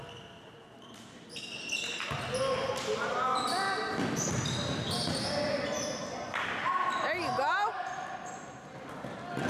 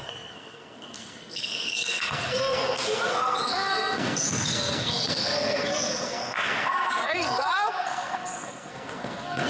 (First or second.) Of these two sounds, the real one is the first